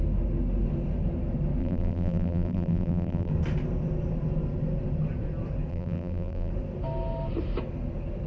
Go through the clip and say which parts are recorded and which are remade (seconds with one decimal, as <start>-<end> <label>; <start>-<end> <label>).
0.0-1.6 recorded; 1.6-3.3 remade; 3.3-5.7 recorded; 5.7-6.5 remade; 6.5-8.3 recorded